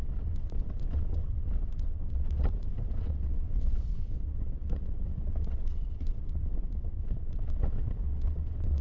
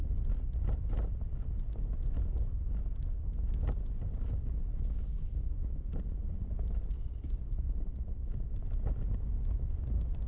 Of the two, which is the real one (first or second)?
second